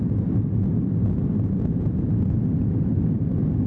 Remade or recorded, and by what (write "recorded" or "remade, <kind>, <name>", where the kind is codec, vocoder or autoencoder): recorded